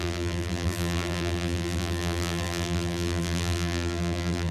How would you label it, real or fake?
fake